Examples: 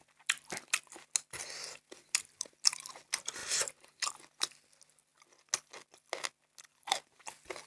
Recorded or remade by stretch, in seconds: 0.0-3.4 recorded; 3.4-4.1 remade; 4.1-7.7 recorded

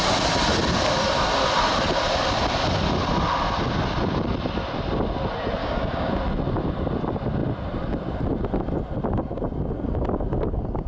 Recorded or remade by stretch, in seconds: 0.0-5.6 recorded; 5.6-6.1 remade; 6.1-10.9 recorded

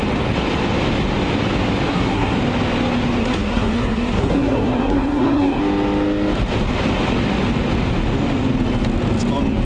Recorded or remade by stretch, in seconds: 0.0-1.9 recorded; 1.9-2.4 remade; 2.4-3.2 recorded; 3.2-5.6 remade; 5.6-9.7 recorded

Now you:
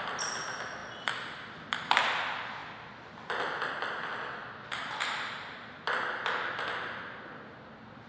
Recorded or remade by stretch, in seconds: 0.0-8.1 recorded

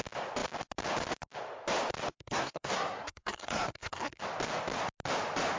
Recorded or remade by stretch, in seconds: 0.0-2.1 recorded; 2.1-4.2 remade; 4.2-5.6 recorded

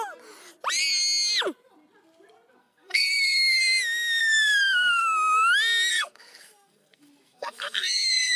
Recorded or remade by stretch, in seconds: 0.0-2.6 recorded; 2.6-3.6 remade; 3.6-4.2 recorded; 4.2-5.0 remade; 5.0-5.9 recorded; 5.9-8.4 remade

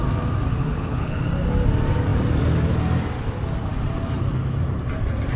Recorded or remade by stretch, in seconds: 0.0-0.6 recorded; 0.6-1.2 remade; 1.2-5.4 recorded

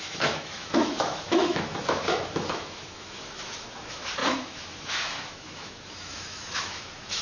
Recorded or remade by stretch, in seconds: 0.0-7.2 remade